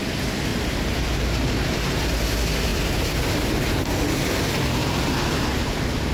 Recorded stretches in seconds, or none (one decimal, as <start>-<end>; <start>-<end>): 0.0-0.5; 2.0-2.7; 3.2-4.8